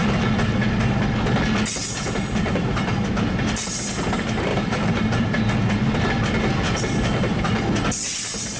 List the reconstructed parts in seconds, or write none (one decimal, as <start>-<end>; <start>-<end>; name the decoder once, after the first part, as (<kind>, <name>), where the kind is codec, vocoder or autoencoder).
4.5-5.4 (vocoder, BigVGAN v2)